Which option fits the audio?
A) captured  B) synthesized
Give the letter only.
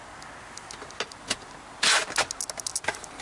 A